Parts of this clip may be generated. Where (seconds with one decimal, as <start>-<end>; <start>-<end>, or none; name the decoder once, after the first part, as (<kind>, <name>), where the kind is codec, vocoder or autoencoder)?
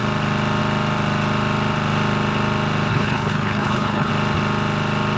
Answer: 2.9-4.1 (codec, HILCodec)